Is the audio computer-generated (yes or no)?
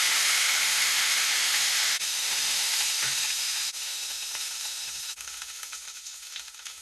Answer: yes